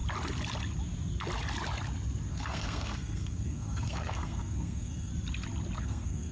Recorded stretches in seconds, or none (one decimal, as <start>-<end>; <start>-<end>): 0.0-2.3; 5.1-5.8